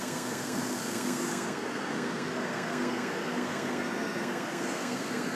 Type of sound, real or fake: fake